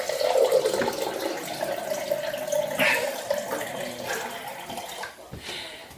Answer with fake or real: real